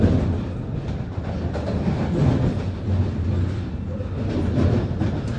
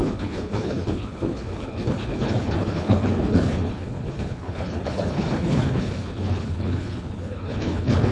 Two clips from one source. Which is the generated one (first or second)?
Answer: second